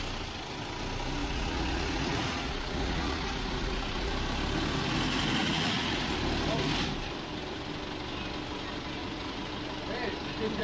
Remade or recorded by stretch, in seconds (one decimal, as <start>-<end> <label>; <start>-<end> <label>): 0.0-1.2 recorded; 1.2-4.1 remade; 4.1-5.4 recorded; 5.4-6.1 remade; 6.1-9.0 recorded; 9.0-9.5 remade; 9.5-10.6 recorded